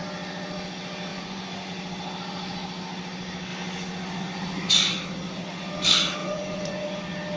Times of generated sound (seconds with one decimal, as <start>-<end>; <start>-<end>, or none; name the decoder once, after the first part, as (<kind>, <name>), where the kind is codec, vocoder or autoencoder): 1.1-1.7 (vocoder, Vocos); 6.2-7.0